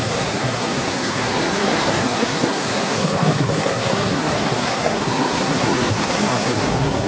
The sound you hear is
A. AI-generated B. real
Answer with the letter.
A